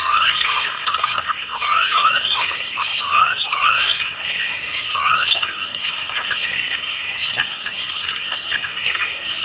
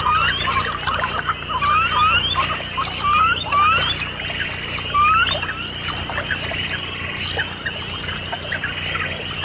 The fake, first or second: first